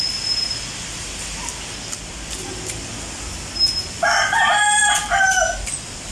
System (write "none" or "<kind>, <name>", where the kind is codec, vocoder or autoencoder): none